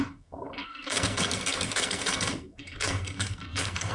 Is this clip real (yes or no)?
no